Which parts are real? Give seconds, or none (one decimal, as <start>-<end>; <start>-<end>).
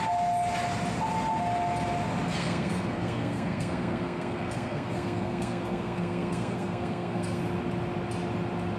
0.0-2.4; 7.4-8.8